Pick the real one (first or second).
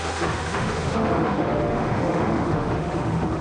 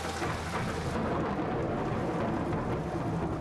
second